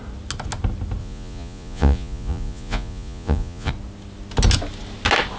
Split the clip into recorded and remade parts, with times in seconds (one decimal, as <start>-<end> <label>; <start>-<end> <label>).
0.0-1.0 recorded; 1.0-3.7 remade; 3.7-5.4 recorded